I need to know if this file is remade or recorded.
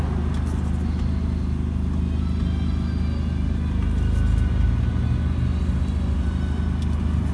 recorded